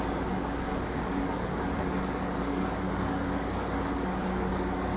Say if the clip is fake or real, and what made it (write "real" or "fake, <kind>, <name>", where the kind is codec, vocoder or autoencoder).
fake, codec, DAC